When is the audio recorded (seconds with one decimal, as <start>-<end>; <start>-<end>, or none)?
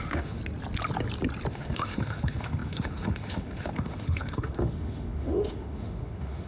0.4-1.5